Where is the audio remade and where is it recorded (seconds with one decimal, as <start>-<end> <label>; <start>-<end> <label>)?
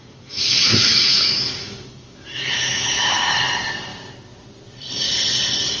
0.0-3.4 remade; 3.4-5.8 recorded